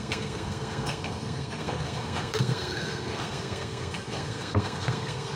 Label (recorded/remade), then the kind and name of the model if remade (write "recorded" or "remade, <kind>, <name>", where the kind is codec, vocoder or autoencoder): remade, codec, SNAC